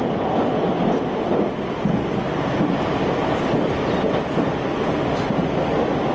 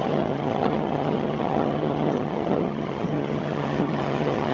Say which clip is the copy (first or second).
second